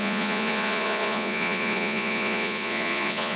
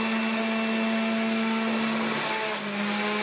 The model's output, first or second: first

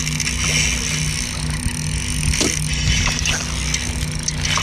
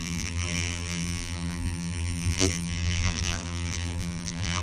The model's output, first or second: second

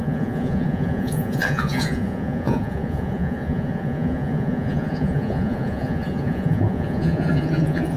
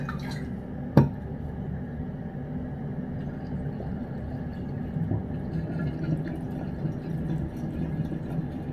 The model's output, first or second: first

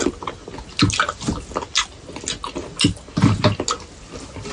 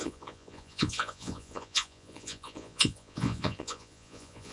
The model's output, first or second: second